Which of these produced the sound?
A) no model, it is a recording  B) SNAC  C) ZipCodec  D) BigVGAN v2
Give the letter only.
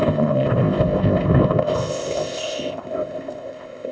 C